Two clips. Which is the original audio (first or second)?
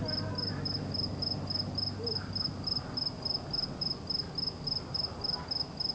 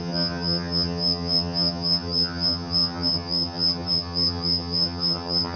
first